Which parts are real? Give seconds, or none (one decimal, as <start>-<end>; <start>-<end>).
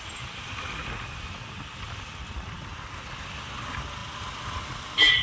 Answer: 0.0-5.2